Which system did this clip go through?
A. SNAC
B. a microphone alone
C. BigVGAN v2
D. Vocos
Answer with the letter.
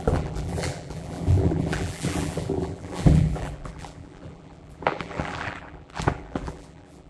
C